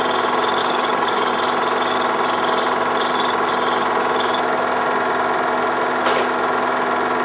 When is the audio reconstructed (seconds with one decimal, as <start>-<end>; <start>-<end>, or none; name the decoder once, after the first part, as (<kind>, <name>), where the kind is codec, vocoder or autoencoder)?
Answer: 0.6-1.3 (codec, DAC)